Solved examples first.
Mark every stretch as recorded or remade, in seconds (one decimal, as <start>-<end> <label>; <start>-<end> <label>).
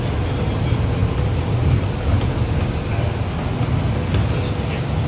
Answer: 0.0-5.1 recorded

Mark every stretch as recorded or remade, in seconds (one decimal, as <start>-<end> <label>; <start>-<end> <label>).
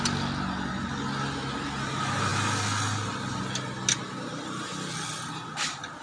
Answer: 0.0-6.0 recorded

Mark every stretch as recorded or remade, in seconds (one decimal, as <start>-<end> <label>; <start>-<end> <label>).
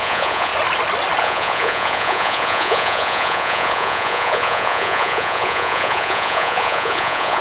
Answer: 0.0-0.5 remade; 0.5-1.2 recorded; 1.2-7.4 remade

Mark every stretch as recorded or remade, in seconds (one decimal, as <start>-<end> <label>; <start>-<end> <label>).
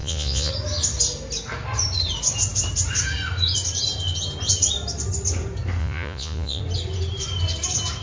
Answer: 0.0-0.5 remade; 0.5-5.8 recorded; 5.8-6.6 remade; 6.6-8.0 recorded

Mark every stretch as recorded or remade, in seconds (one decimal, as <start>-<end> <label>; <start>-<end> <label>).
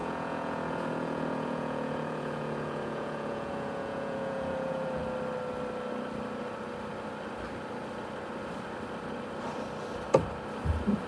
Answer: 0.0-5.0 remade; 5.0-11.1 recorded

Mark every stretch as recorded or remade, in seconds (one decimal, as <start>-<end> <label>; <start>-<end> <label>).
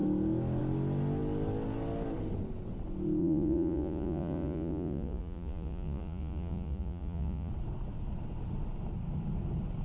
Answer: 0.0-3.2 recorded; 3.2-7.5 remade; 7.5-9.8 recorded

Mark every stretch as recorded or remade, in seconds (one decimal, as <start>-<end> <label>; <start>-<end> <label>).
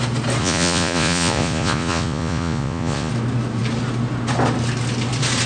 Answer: 0.0-0.4 recorded; 0.4-3.1 remade; 3.1-5.5 recorded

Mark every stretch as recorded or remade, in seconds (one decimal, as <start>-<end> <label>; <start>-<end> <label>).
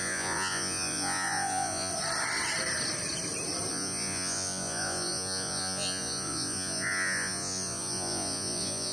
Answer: 0.0-1.9 remade; 1.9-3.7 recorded; 3.7-8.9 remade